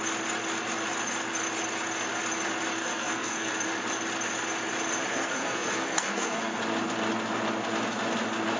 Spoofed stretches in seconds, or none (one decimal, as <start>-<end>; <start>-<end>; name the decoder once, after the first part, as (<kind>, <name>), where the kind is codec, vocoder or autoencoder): 2.8-3.5 (codec, SNAC); 5.1-6.6